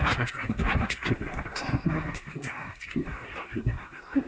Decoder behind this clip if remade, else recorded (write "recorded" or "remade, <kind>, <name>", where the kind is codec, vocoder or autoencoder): remade, codec, SNAC